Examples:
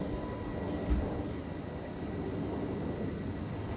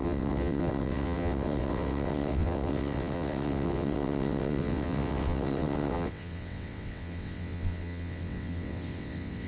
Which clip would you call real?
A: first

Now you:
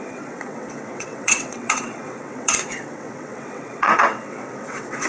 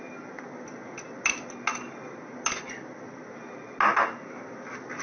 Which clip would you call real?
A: second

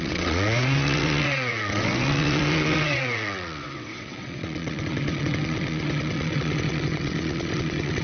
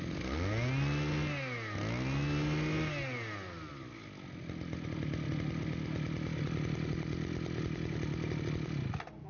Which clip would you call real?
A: second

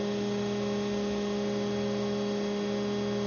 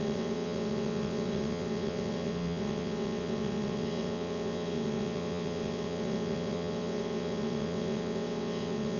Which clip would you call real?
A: first